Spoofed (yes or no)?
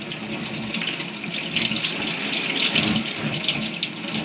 no